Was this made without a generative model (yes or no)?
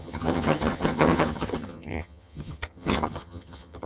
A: no